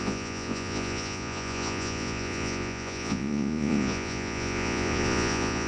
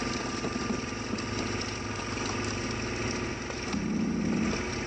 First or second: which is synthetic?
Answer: first